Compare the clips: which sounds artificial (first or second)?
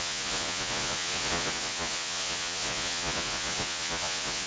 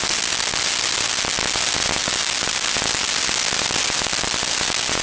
first